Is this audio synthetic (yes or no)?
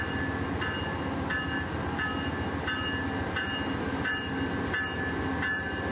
no